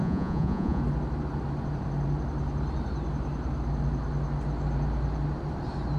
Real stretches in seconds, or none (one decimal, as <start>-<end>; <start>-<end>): 0.8-6.0